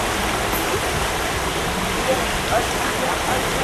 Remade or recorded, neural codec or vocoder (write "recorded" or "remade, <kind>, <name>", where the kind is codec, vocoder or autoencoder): recorded